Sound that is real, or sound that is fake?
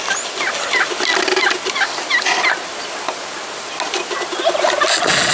real